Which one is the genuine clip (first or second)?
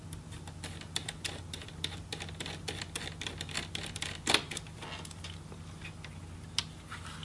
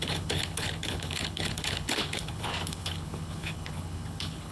first